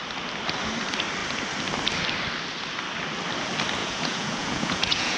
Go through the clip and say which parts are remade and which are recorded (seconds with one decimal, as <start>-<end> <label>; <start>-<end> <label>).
0.0-3.8 recorded; 3.8-5.2 remade